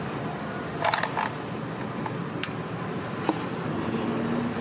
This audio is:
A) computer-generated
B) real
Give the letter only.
B